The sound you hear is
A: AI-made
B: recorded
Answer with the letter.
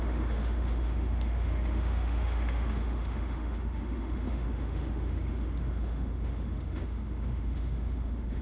A